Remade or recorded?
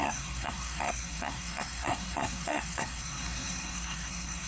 remade